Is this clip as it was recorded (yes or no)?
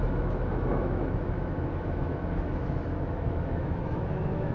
no